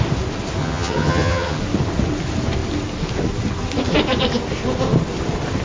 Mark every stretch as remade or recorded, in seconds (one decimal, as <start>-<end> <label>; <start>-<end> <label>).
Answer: 0.0-0.6 recorded; 0.6-1.6 remade; 1.6-5.6 recorded